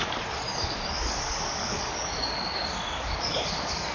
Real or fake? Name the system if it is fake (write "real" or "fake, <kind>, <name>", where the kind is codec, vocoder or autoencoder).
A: fake, codec, DAC